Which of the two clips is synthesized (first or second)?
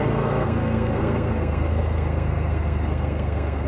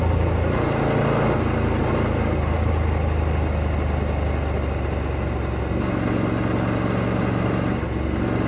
first